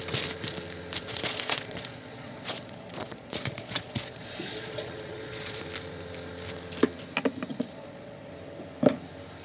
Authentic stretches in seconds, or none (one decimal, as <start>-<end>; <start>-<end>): 0.0-1.0; 5.6-7.5; 8.3-9.4